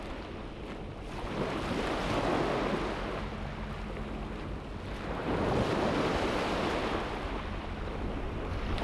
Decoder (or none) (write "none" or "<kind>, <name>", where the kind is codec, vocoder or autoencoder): none